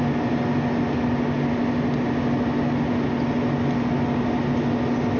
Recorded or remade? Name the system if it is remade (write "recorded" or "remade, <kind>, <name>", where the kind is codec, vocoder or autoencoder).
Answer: recorded